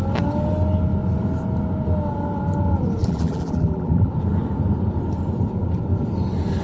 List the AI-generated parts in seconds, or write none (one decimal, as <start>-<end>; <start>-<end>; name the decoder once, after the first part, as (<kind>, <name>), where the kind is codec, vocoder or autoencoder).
3.0-4.1 (vocoder, BigVGAN v2)